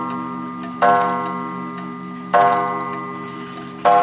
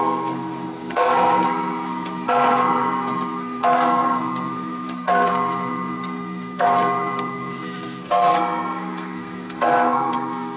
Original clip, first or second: first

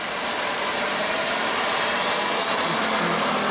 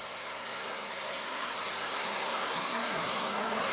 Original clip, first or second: first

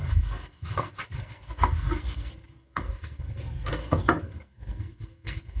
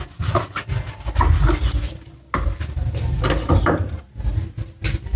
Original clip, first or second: second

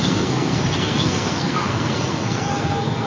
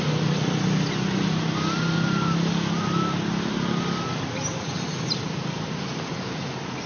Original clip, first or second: second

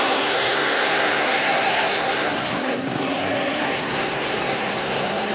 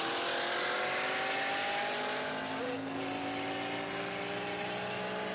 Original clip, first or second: second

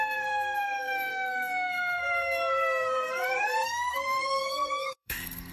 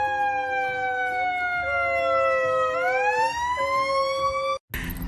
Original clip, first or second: second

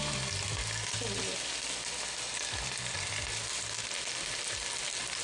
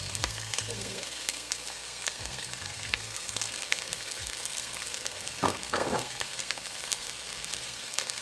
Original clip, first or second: first